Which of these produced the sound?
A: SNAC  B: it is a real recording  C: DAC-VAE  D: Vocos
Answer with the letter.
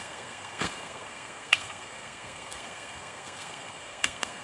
A